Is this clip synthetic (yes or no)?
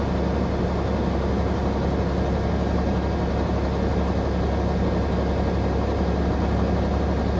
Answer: no